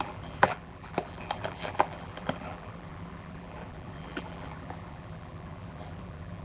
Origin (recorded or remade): remade